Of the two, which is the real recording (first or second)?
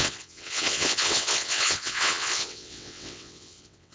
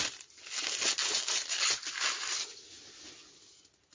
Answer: second